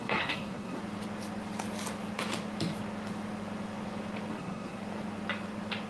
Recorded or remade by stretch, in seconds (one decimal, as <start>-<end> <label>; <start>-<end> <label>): 0.0-0.8 remade; 0.8-4.3 recorded; 4.3-4.8 remade; 4.8-5.9 recorded